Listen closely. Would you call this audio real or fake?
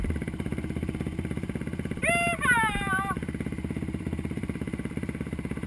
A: fake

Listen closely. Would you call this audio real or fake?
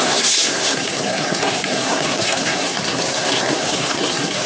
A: fake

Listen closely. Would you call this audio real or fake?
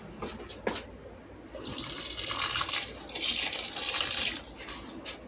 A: real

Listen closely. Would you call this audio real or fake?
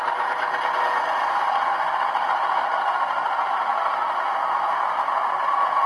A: real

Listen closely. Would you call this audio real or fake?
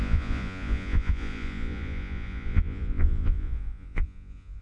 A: fake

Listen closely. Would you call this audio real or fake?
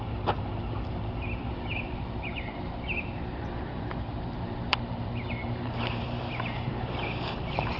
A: fake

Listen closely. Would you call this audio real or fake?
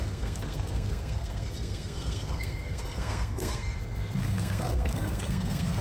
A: fake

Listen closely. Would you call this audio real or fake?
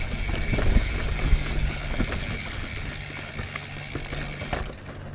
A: real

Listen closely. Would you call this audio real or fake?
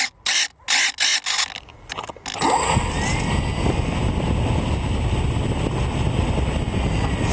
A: real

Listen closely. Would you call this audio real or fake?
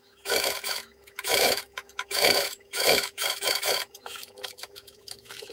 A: fake